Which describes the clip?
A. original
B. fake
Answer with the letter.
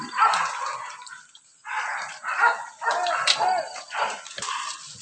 A